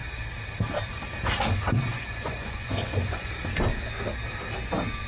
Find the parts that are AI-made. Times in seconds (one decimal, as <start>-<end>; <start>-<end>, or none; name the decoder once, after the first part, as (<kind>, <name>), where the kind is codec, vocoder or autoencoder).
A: 1.9-3.3 (vocoder, Vocos)

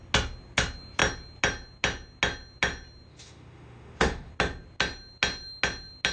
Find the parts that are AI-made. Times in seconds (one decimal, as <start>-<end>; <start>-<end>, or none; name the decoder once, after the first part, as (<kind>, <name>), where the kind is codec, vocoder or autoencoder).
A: 3.1-4.3 (autoencoder, DAC-VAE)